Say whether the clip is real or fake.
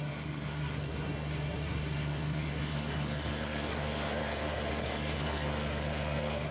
fake